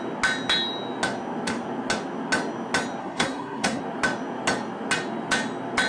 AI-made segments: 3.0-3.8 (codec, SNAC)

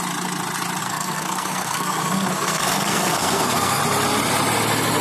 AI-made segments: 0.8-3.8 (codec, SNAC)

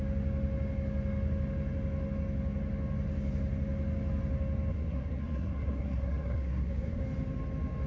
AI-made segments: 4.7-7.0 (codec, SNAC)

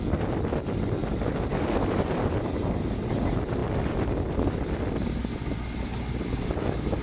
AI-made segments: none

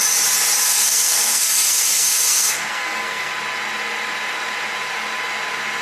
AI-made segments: 0.6-3.3 (codec, SNAC)